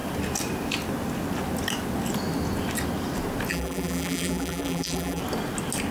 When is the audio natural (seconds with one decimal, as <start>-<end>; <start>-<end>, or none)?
0.0-3.5; 5.2-5.9